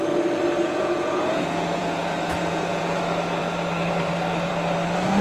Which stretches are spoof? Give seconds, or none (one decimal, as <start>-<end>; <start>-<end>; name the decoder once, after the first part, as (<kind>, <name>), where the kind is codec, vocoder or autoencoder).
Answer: 0.6-3.0 (vocoder, Vocos)